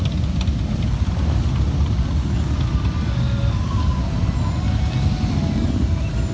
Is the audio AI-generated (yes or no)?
no